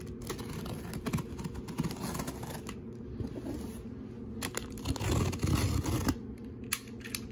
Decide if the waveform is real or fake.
real